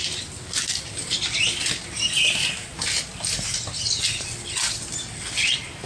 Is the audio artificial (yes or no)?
no